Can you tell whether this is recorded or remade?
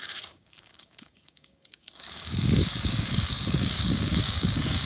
remade